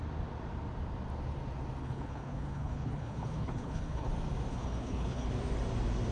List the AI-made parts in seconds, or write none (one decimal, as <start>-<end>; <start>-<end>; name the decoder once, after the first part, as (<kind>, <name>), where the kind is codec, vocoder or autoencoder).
1.8-4.1 (codec, HILCodec); 4.5-5.3